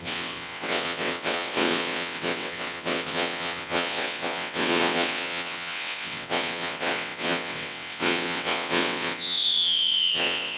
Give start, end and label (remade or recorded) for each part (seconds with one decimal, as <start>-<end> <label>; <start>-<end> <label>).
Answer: 0.0-10.6 remade